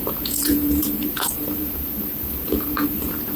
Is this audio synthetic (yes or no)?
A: yes